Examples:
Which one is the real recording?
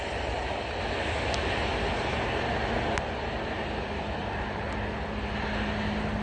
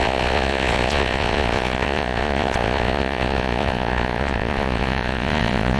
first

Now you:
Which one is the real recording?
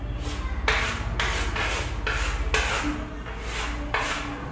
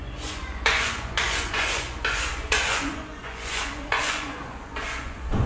first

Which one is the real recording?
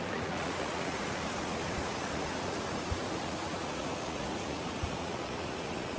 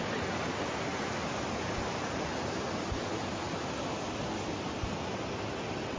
second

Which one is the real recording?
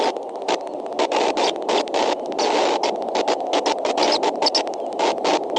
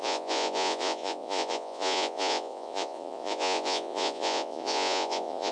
first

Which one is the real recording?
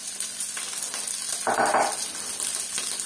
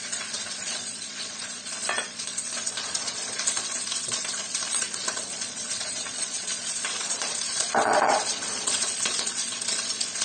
first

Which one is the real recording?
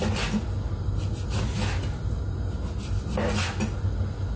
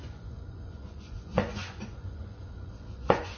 first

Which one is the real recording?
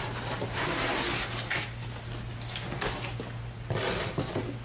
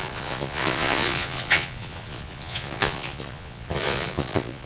first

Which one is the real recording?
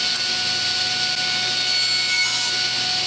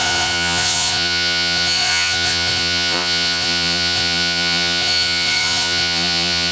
first